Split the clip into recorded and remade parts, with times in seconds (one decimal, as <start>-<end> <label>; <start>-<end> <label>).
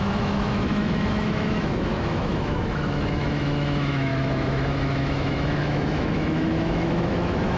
0.0-7.6 remade